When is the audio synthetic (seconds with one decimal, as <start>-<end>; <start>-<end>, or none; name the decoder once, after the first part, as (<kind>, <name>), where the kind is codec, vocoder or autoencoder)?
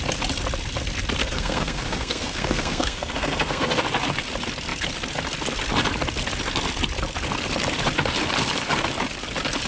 1.2-3.8 (codec, SNAC)